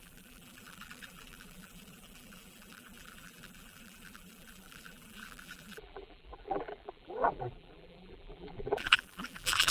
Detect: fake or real fake